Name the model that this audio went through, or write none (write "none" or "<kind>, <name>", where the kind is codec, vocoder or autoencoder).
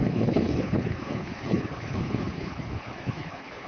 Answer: codec, HILCodec